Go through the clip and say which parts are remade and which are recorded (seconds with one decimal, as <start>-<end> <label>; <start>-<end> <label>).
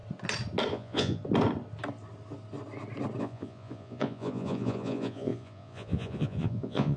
0.0-0.7 recorded; 0.7-1.2 remade; 1.2-3.2 recorded; 3.2-7.0 remade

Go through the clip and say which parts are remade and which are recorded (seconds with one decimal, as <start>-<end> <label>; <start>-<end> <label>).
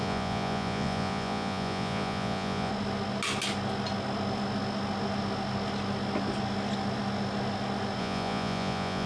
0.0-2.7 remade; 2.7-8.0 recorded; 8.0-9.1 remade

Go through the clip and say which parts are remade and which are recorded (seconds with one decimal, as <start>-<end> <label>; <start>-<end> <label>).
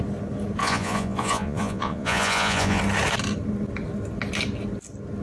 0.0-0.6 recorded; 0.6-2.8 remade; 2.8-5.2 recorded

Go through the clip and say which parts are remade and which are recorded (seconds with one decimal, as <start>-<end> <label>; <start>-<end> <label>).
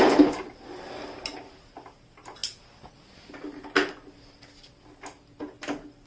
0.0-6.1 recorded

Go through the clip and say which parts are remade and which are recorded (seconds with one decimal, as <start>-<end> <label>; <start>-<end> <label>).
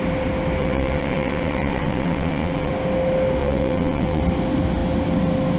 0.0-0.6 recorded; 0.6-2.7 remade; 2.7-3.4 recorded; 3.4-4.2 remade; 4.2-5.6 recorded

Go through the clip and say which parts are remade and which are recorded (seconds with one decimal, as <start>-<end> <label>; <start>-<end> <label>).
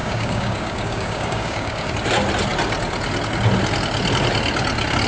0.0-1.9 remade; 1.9-5.1 recorded